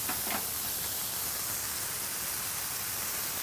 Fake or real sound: real